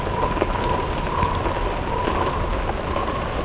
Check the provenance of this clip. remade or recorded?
recorded